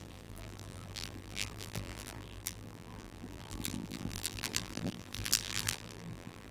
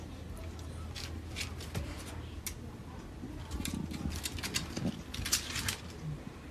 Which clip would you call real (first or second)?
second